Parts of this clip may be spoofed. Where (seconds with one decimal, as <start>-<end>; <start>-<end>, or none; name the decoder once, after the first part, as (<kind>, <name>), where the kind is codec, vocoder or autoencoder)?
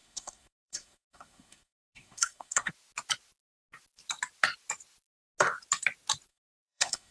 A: 0.0-2.7 (codec, SNAC); 6.3-7.1